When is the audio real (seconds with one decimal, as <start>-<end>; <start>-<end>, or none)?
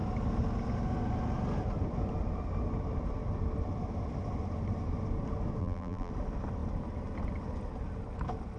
0.0-5.6; 6.1-8.6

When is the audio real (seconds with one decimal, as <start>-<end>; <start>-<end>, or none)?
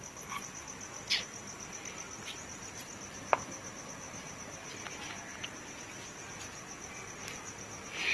0.0-8.1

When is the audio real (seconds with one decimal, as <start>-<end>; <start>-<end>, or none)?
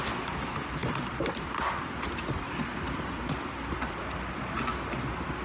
0.0-0.8; 3.7-5.4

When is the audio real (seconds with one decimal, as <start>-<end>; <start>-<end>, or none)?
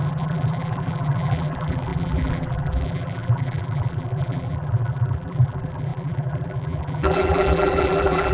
none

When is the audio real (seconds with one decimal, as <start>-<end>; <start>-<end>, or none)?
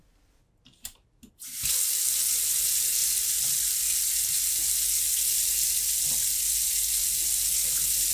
0.0-8.1